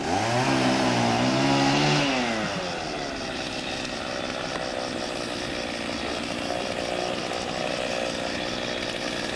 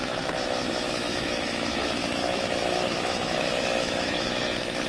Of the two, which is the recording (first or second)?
first